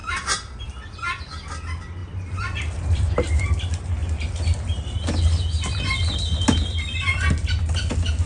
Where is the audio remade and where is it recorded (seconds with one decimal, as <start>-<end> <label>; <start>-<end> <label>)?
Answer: 0.0-0.6 remade; 0.6-2.0 recorded; 2.0-3.4 remade; 3.4-8.3 recorded